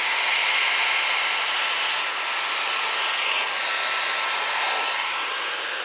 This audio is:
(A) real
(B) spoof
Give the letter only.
A